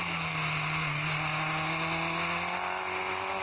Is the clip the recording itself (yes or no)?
yes